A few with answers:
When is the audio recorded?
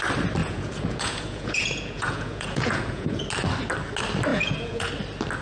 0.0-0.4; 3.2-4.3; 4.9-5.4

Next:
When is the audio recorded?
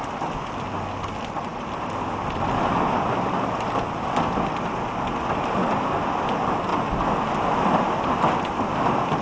0.0-9.2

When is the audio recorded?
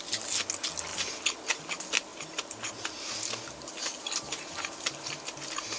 0.0-0.9; 1.6-2.1; 5.2-5.8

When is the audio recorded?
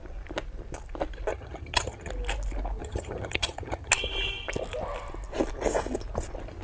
0.0-1.3; 2.1-2.8; 3.9-6.6